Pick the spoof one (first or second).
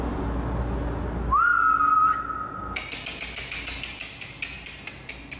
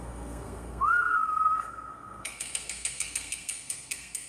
second